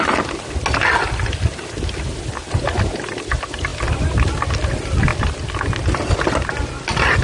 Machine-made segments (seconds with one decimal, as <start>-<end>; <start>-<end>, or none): none